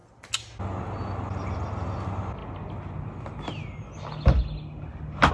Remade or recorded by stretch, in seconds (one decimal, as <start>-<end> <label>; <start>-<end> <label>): 0.0-5.3 recorded